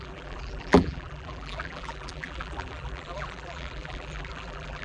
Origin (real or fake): fake